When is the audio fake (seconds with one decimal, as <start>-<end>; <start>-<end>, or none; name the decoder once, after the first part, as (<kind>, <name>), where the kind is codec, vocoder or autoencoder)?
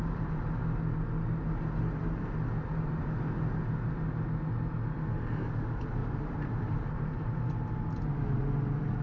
0.0-0.6 (vocoder, BigVGAN v2); 5.5-9.0